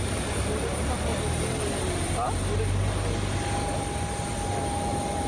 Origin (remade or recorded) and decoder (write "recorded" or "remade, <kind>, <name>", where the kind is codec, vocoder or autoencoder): recorded